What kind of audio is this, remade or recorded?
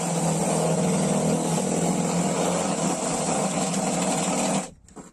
recorded